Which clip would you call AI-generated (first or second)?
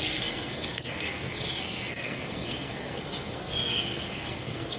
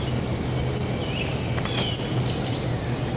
first